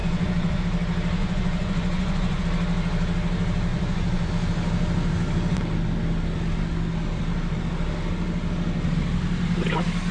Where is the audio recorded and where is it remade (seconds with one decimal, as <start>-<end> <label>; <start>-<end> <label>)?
0.0-0.6 remade; 0.6-1.2 recorded; 1.2-2.4 remade; 2.4-3.7 recorded; 3.7-4.3 remade; 4.3-10.1 recorded

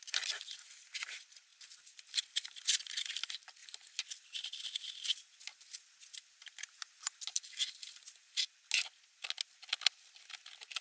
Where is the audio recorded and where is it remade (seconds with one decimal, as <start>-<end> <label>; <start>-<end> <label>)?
0.0-10.8 recorded